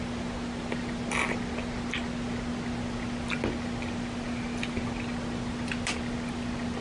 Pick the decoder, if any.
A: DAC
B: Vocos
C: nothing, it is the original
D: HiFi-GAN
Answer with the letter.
C